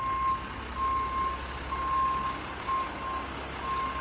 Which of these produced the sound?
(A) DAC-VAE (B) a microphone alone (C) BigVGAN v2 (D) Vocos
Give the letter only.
B